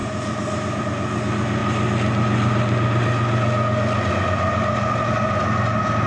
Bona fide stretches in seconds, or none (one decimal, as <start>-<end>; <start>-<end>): 0.0-6.1